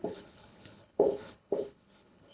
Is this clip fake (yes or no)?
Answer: yes